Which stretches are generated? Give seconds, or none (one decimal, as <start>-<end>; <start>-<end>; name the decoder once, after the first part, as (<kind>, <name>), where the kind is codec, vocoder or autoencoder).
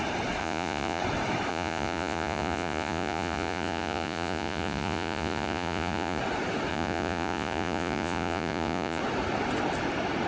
0.4-1.0 (vocoder, Vocos); 1.5-6.2; 6.7-9.0